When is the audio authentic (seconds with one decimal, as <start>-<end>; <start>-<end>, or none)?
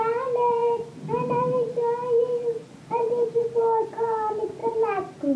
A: 0.0-4.6